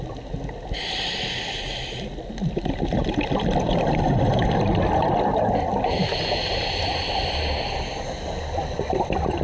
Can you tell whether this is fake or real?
real